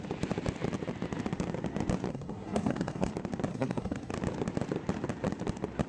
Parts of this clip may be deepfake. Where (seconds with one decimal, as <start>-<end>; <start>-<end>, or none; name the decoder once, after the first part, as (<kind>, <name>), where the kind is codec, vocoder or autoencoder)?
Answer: 2.1-3.1 (codec, SNAC); 3.5-4.1